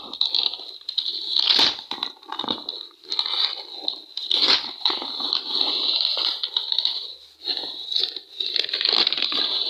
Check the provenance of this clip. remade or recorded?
recorded